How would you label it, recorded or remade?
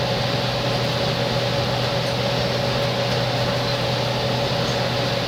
recorded